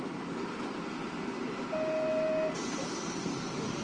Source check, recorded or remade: recorded